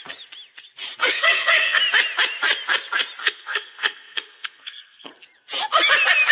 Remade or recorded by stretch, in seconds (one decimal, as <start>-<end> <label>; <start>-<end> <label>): 0.0-1.0 recorded; 1.0-1.8 remade; 1.8-3.2 recorded; 3.2-5.1 remade; 5.1-6.3 recorded

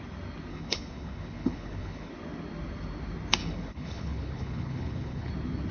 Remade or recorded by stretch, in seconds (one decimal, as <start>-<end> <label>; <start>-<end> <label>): 0.0-0.5 recorded; 0.5-2.1 remade; 2.1-3.4 recorded; 3.4-5.3 remade; 5.3-5.7 recorded

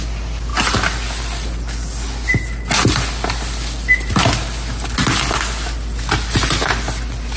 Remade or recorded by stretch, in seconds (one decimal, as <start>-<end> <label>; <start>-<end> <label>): 0.0-7.4 recorded

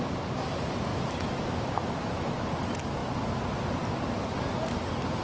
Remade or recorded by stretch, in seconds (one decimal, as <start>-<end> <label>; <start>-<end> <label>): 0.0-0.9 recorded; 0.9-2.5 remade; 2.5-5.2 recorded

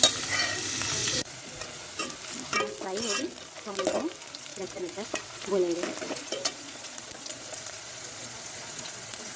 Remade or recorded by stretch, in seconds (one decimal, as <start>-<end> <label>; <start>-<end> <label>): 0.0-1.0 recorded; 1.0-1.6 remade; 1.6-4.5 recorded; 4.5-5.4 remade; 5.4-6.0 recorded; 6.0-9.4 remade

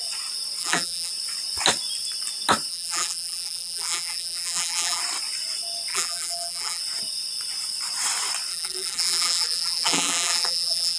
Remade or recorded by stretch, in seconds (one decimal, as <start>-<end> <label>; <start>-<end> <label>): 0.0-0.6 recorded; 0.6-1.1 remade; 1.1-2.7 recorded; 2.7-5.0 remade; 5.0-5.9 recorded; 5.9-6.8 remade; 6.8-8.5 recorded; 8.5-11.0 remade

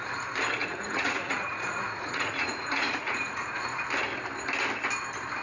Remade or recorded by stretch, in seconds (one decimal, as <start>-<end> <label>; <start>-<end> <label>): 0.0-0.6 recorded; 0.6-3.8 remade; 3.8-5.4 recorded

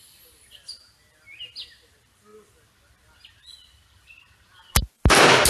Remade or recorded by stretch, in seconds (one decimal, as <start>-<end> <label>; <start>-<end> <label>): 0.0-5.5 recorded